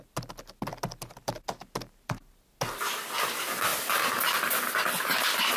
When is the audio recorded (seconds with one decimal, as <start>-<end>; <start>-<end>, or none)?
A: 0.0-5.6